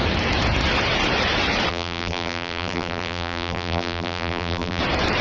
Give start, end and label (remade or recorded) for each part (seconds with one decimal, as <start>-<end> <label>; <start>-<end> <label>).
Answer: 0.0-1.7 recorded; 1.7-4.8 remade; 4.8-5.2 recorded